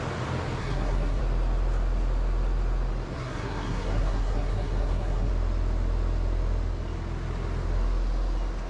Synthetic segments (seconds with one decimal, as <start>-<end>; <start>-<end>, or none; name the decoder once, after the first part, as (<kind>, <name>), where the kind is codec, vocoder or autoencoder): 0.6-1.2 (codec, SNAC); 3.1-5.3